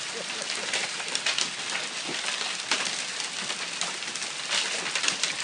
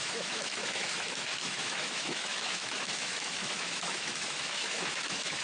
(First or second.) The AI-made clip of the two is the second